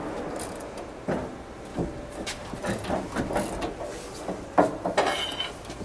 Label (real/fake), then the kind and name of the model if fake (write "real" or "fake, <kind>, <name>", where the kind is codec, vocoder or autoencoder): real